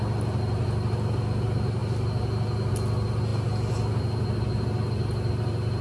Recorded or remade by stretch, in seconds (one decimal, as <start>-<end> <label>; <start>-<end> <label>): 0.0-5.8 recorded